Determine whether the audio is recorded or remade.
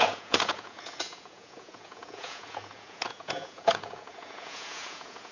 remade